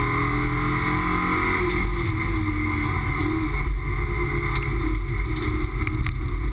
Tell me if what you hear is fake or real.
real